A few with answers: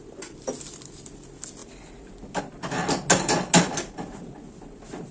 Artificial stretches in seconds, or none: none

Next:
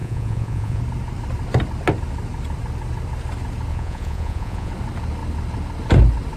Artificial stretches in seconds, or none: 0.0-0.8; 3.7-4.7

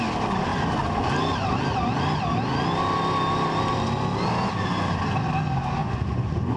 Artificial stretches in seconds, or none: 5.8-6.6

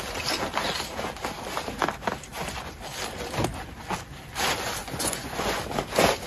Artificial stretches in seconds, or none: 4.8-5.6

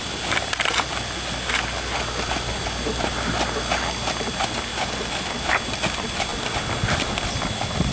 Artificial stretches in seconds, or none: none

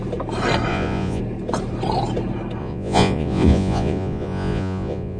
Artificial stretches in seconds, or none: 0.7-1.2; 2.6-5.2

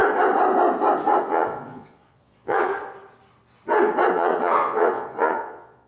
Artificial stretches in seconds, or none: 1.2-2.7; 4.1-5.9